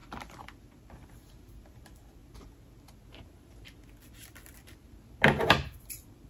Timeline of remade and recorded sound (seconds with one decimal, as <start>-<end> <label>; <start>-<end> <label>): 0.0-1.3 recorded; 1.3-2.2 remade; 2.2-5.4 recorded; 5.4-6.3 remade